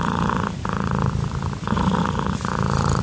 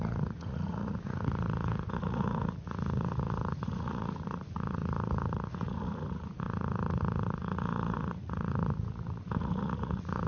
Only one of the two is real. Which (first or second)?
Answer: first